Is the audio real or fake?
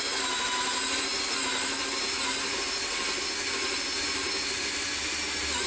real